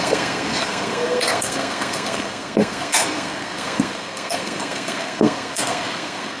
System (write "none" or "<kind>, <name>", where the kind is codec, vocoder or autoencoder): codec, SNAC